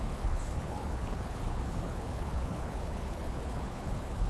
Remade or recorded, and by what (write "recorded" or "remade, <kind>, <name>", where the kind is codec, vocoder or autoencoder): remade, codec, HILCodec